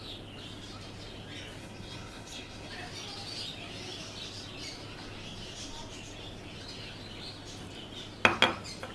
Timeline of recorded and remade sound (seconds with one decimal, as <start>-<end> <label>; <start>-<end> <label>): 0.0-1.6 recorded; 1.6-2.7 remade; 2.7-8.9 recorded